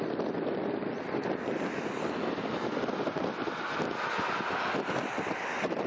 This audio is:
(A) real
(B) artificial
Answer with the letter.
A